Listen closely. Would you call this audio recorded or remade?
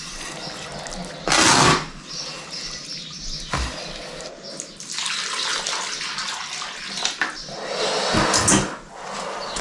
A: recorded